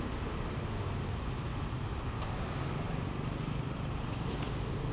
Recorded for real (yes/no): yes